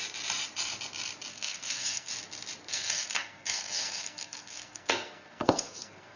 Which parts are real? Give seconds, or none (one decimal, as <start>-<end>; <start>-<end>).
0.0-1.3; 2.1-2.7